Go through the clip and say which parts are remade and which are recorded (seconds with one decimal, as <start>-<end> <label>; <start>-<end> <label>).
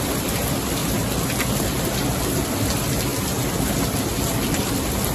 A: 0.0-0.8 remade; 0.8-1.8 recorded; 1.8-3.1 remade; 3.1-4.6 recorded; 4.6-5.1 remade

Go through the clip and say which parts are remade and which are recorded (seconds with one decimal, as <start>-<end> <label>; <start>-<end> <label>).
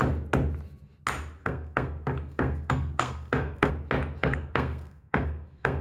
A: 0.0-1.4 recorded; 1.4-3.7 remade; 3.7-4.2 recorded; 4.2-5.8 remade